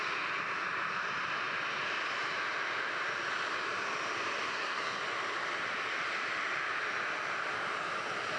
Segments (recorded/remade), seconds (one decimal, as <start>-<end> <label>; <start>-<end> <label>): 0.0-4.5 recorded; 4.5-5.0 remade; 5.0-8.4 recorded

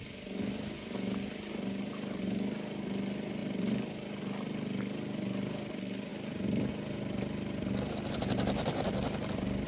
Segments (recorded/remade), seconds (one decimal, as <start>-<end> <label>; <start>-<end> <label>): 0.0-3.4 recorded; 3.4-4.2 remade; 4.2-6.1 recorded; 6.1-6.7 remade; 6.7-9.7 recorded

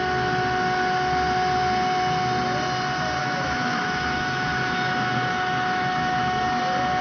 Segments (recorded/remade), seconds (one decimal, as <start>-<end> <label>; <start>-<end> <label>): 0.0-3.2 recorded; 3.2-6.6 remade; 6.6-7.0 recorded

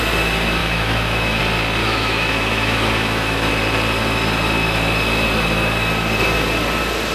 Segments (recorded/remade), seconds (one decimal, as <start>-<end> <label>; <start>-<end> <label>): 0.0-0.6 recorded; 0.6-1.4 remade; 1.4-1.8 recorded; 1.8-3.5 remade; 3.5-7.1 recorded

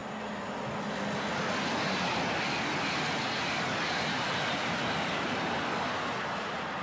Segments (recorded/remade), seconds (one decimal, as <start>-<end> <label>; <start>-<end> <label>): 0.0-4.6 recorded; 4.6-5.4 remade; 5.4-6.8 recorded

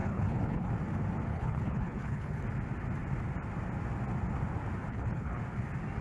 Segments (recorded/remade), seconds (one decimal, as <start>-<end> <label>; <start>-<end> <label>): 0.0-0.7 remade; 0.7-1.3 recorded; 1.3-2.4 remade; 2.4-4.9 recorded; 4.9-5.4 remade; 5.4-6.0 recorded

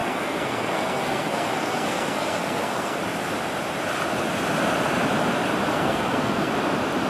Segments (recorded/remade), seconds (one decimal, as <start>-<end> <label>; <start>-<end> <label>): 0.0-3.0 remade; 3.0-5.7 recorded; 5.7-6.5 remade; 6.5-7.1 recorded

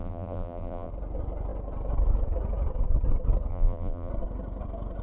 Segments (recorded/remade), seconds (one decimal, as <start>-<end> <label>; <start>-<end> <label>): 0.0-0.9 remade; 0.9-3.5 recorded; 3.5-4.1 remade; 4.1-5.0 recorded